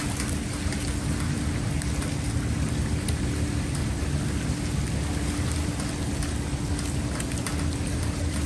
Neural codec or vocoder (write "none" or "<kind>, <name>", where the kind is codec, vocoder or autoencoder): none